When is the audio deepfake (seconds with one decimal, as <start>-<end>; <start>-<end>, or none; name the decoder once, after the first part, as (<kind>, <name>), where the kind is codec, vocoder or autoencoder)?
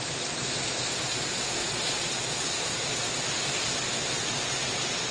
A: 1.6-2.8 (vocoder, Vocos)